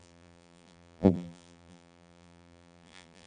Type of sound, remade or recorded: remade